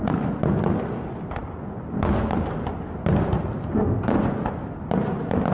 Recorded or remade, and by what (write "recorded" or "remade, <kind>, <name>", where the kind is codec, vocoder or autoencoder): recorded